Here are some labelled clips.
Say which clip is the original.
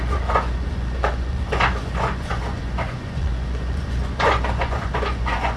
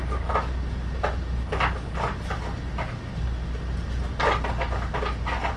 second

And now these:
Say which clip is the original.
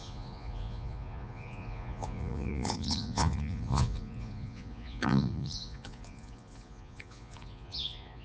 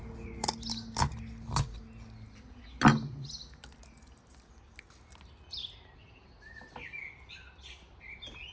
second